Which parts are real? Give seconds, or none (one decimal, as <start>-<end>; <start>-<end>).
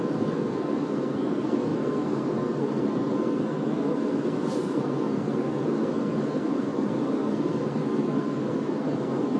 none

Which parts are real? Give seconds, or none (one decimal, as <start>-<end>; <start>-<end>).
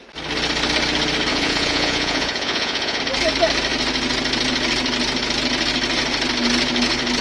0.0-1.3; 3.0-7.2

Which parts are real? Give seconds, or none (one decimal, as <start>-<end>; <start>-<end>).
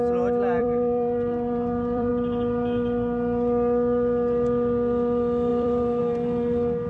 0.0-0.6; 2.1-5.5; 6.0-6.9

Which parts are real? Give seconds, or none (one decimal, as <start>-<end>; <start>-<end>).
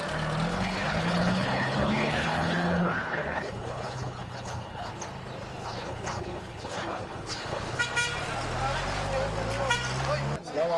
0.0-0.5; 4.9-5.6; 7.8-10.8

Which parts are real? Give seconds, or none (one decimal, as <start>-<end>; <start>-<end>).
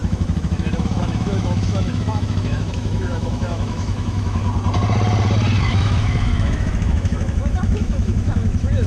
4.4-5.6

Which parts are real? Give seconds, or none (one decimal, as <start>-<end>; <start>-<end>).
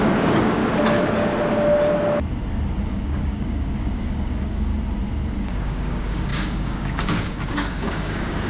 0.6-2.9; 4.7-5.4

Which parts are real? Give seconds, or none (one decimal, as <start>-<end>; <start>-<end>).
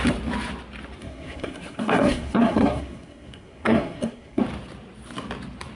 0.0-1.0; 4.4-5.7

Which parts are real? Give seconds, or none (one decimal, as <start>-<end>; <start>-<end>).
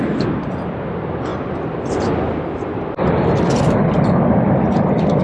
0.0-5.2